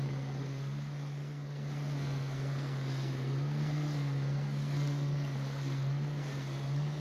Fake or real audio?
fake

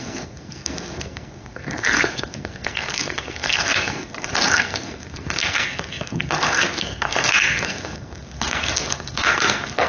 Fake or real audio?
fake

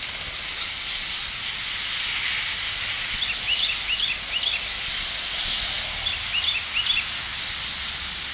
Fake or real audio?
real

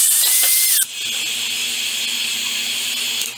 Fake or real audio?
real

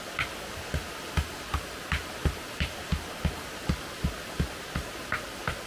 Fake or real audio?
real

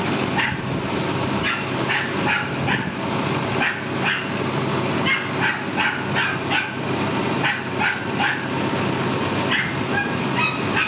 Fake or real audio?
real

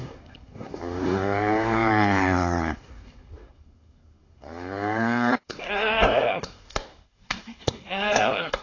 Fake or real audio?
fake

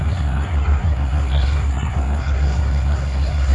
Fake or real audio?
fake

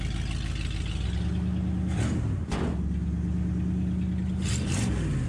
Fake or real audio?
real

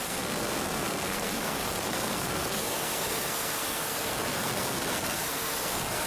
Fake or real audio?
fake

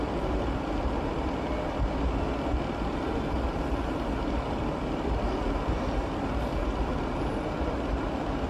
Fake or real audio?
real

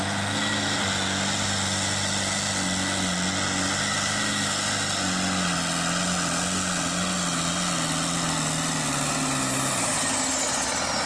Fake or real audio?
real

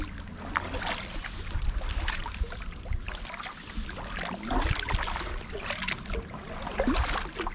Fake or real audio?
real